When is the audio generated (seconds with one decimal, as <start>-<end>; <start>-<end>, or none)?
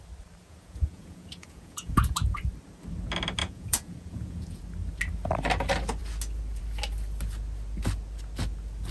0.4-2.4; 3.4-4.6